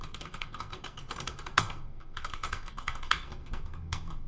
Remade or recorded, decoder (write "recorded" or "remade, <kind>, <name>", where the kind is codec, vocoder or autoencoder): remade, codec, SNAC